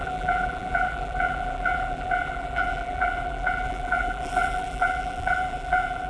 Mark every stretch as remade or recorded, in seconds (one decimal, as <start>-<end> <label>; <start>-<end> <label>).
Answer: 0.0-6.1 remade